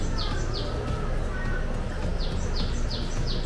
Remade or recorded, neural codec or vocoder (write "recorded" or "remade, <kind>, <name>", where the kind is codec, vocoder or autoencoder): recorded